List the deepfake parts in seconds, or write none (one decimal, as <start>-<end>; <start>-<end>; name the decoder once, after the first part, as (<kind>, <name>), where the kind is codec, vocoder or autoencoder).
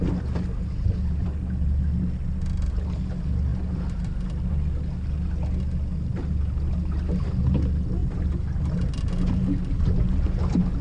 none